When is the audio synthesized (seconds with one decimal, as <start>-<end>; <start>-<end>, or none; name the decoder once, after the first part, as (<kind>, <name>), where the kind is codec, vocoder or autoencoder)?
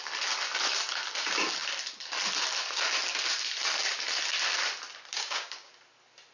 5.1-5.7 (codec, DAC)